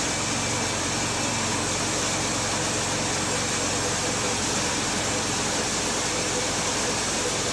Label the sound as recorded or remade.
recorded